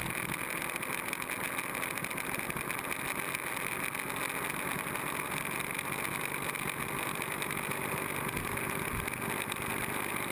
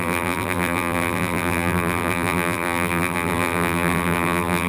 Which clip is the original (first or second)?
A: first